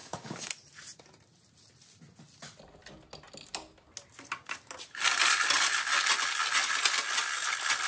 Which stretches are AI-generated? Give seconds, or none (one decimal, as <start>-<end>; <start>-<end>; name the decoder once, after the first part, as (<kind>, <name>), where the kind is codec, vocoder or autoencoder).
0.0-0.5 (codec, DAC)